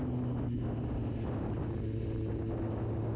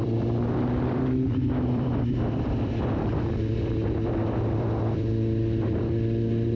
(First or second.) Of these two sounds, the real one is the first